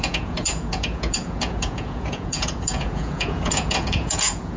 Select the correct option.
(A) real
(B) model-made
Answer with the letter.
B